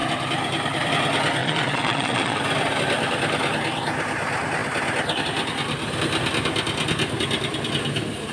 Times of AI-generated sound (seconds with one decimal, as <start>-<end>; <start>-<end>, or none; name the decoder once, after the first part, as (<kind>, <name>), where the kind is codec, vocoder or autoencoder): 1.4-2.4 (vocoder, Vocos)